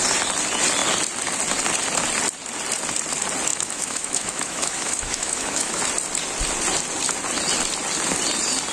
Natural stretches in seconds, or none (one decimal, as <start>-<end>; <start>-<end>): 0.0-3.5; 5.8-8.7